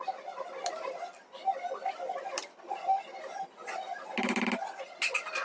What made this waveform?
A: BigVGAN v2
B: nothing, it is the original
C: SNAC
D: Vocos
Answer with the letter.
B